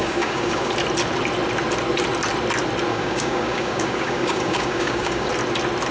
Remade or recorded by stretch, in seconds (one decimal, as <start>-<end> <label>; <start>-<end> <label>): 0.0-0.7 remade; 0.7-2.9 recorded; 2.9-5.3 remade; 5.3-5.9 recorded